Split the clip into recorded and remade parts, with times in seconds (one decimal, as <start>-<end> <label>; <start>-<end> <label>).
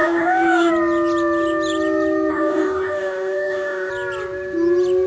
0.0-0.7 remade; 0.7-2.3 recorded; 2.3-3.9 remade; 3.9-5.1 recorded